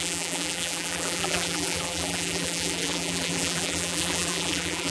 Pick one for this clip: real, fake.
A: fake